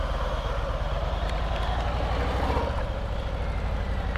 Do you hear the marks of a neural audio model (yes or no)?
no